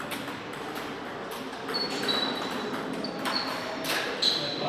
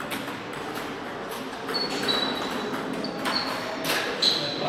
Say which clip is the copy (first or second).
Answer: first